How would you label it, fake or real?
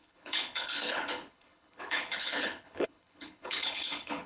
fake